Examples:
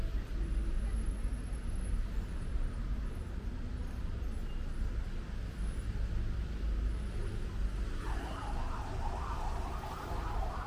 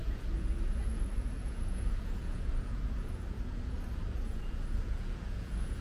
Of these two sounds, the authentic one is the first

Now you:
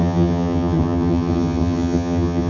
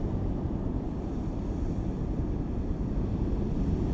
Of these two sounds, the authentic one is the second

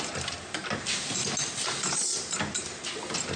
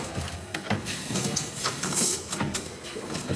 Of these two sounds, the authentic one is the first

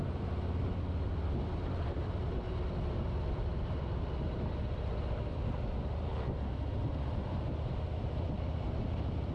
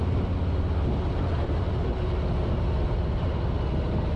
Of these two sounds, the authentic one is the second